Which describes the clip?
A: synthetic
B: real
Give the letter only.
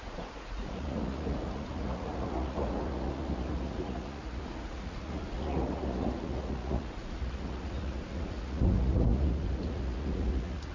A